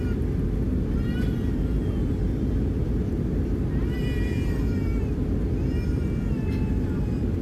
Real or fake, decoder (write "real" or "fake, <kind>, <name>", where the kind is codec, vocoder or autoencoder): real